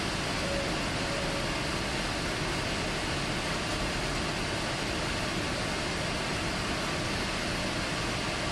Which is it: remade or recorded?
recorded